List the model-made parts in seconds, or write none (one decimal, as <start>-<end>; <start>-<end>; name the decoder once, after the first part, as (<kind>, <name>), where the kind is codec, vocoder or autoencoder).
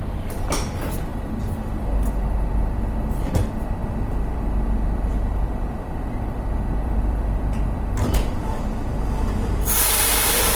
0.0-10.5 (vocoder, BigVGAN v2)